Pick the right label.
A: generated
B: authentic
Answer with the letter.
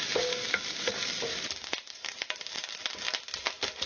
B